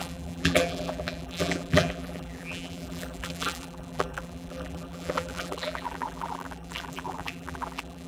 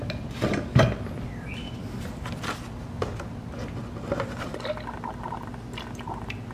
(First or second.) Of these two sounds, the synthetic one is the first